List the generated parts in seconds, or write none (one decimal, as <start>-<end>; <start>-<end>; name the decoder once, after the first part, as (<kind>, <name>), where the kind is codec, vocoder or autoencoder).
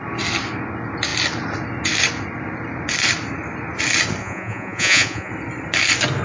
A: 4.2-5.3 (vocoder, Vocos)